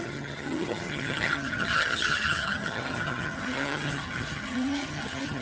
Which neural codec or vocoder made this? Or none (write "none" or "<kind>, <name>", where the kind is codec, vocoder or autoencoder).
vocoder, HiFi-GAN